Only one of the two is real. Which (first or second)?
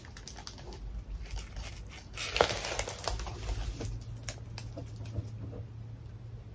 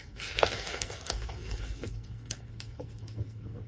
first